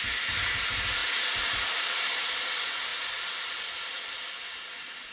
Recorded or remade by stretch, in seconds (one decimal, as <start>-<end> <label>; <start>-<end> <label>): 0.0-5.1 recorded